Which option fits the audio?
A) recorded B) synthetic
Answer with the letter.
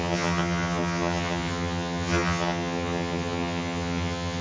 B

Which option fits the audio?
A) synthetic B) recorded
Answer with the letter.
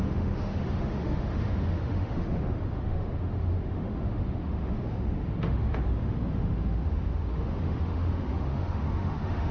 A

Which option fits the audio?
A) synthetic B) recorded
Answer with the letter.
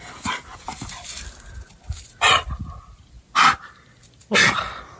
B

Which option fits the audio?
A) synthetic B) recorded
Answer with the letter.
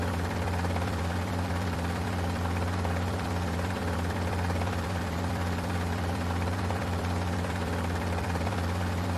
A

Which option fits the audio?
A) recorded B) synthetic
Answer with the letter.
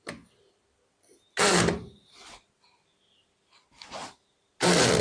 A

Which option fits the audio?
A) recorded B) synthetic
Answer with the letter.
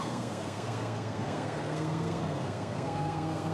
B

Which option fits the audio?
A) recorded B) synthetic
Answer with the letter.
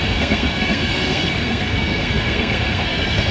B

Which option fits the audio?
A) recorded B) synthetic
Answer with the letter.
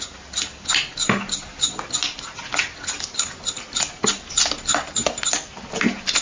A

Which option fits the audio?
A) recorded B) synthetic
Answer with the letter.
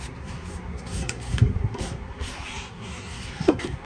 B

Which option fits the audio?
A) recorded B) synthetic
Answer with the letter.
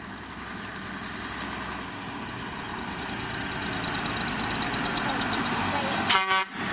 A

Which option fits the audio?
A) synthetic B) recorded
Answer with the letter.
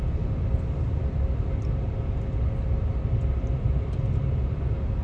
B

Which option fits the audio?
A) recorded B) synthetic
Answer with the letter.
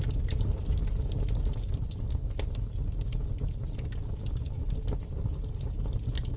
A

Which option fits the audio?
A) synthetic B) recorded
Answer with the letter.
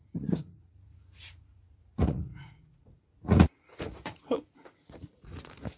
A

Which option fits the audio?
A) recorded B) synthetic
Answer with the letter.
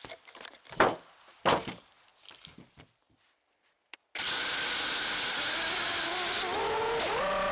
A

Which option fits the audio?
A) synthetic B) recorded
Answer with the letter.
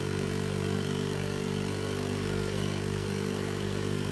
A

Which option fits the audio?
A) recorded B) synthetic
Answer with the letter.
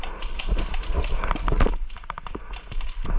A